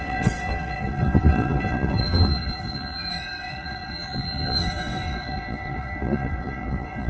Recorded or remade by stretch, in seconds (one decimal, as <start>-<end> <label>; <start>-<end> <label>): 0.0-7.1 remade